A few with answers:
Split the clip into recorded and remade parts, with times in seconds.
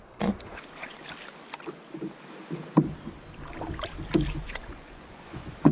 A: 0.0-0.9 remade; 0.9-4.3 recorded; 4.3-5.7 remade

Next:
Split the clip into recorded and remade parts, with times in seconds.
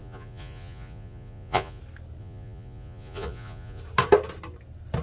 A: 0.0-1.8 remade; 1.8-2.2 recorded; 2.2-3.8 remade; 3.8-5.0 recorded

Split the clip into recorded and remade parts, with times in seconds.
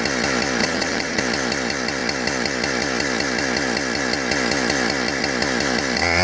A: 0.0-0.6 recorded; 0.6-1.2 remade; 1.2-6.2 recorded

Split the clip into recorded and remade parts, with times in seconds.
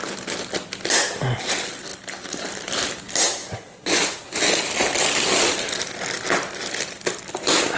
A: 0.0-3.4 recorded; 3.4-4.4 remade; 4.4-7.8 recorded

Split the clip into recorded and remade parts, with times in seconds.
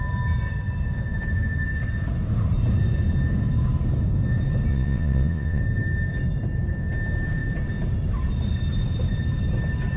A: 0.0-4.7 recorded; 4.7-5.6 remade; 5.6-10.0 recorded